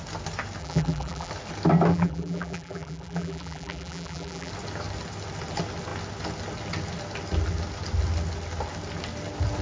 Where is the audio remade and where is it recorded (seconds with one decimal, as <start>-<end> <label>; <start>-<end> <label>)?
0.0-0.6 recorded; 0.6-1.3 remade; 1.3-1.9 recorded; 1.9-4.5 remade; 4.5-9.6 recorded